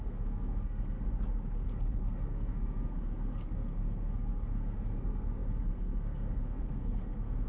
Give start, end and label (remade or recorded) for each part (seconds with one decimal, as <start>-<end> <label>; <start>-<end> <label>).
0.0-7.5 remade